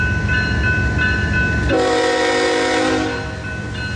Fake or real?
real